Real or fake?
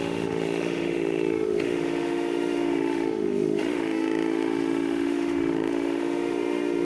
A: fake